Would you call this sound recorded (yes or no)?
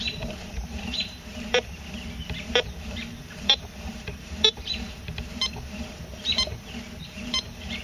no